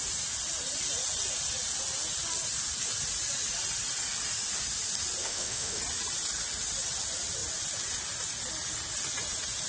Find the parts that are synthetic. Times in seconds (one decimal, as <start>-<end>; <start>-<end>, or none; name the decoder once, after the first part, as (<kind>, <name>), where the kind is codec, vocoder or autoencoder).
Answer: 5.2-5.8 (autoencoder, DAC-VAE)